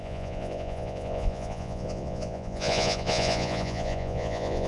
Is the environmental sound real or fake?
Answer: fake